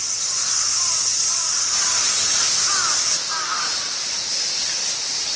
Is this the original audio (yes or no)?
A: yes